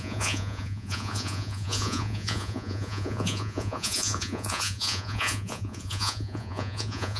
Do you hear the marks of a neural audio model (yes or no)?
yes